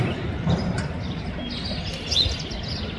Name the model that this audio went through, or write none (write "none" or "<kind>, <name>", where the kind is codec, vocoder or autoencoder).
none